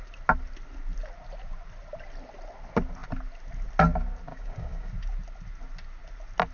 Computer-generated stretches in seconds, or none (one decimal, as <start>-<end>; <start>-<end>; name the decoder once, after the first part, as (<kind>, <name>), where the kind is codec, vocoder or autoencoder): 4.3-4.9 (codec, DAC)